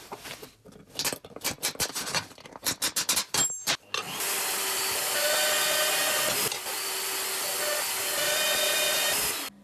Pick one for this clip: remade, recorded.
recorded